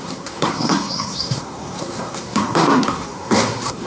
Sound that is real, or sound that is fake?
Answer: fake